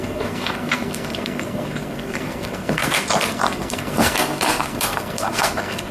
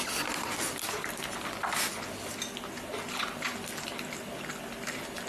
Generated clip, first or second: first